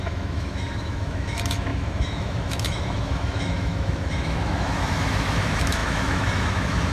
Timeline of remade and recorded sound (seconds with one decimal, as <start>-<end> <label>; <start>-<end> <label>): 0.0-6.9 remade